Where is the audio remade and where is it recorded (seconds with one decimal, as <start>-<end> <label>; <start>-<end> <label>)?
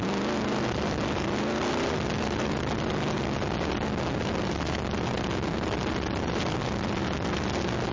0.0-7.9 recorded